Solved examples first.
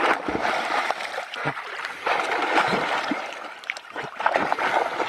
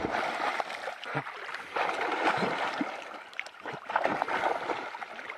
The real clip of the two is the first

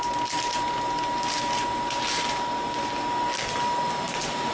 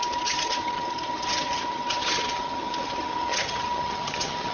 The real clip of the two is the first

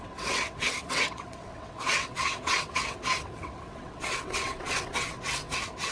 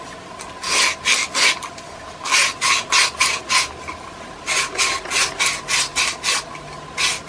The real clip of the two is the second